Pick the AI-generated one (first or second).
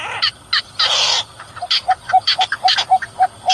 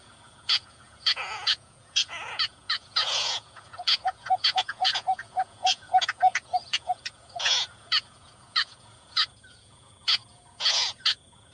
second